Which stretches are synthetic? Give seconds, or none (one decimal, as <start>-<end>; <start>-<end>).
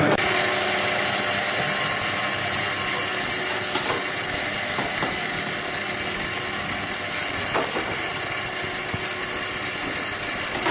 none